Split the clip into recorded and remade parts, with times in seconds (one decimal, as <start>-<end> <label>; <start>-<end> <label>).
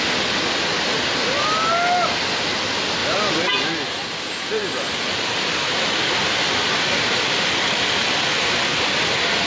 0.0-4.6 recorded; 4.6-8.8 remade; 8.8-9.5 recorded